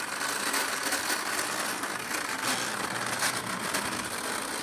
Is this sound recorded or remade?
recorded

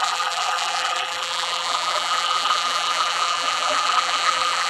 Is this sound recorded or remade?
remade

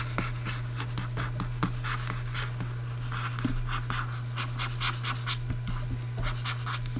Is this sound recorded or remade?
recorded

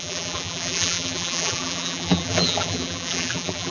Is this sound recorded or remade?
remade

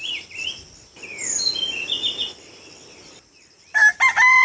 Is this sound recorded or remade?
recorded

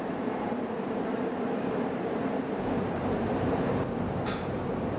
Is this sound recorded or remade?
remade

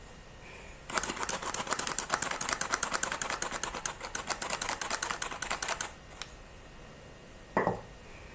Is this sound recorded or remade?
recorded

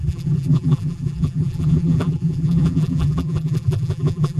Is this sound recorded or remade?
remade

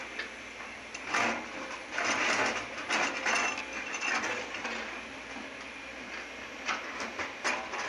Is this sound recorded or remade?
recorded